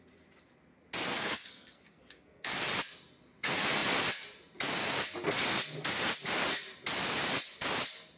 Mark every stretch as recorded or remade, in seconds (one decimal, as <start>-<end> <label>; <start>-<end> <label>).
0.0-1.1 recorded; 1.1-2.6 remade; 2.6-8.2 recorded